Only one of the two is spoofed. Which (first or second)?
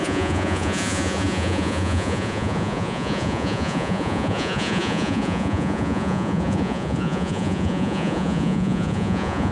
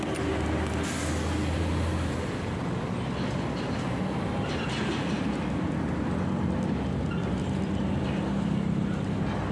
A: first